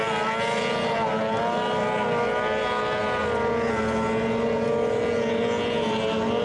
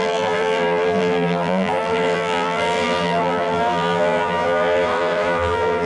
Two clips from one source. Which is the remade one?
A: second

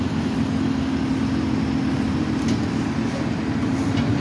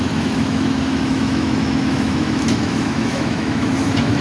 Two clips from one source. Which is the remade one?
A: second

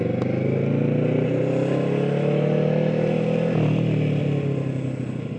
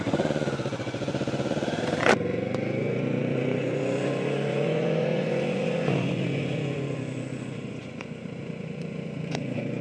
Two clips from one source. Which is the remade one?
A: second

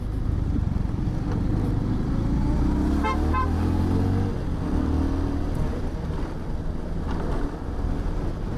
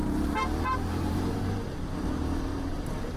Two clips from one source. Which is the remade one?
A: second